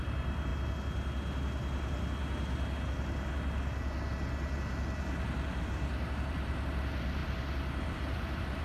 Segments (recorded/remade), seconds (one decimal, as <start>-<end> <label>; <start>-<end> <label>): 0.0-0.5 remade; 0.5-5.6 recorded; 5.6-7.2 remade; 7.2-7.8 recorded; 7.8-8.6 remade